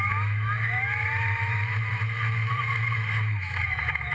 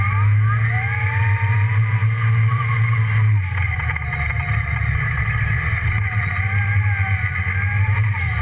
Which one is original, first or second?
second